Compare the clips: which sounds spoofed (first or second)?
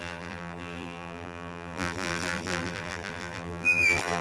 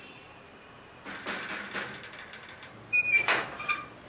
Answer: first